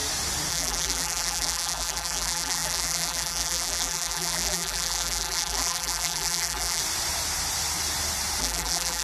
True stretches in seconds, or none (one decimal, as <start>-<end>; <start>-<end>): 0.0-0.5; 6.8-8.4